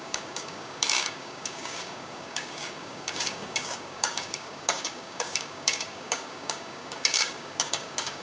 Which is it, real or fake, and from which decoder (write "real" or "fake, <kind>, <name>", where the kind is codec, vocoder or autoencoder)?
fake, codec, DAC